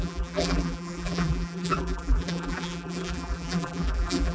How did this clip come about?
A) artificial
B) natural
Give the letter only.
A